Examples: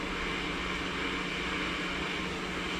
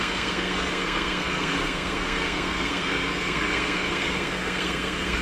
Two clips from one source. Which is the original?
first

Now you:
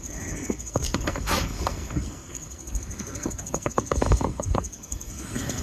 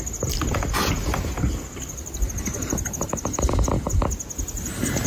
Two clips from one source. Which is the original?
second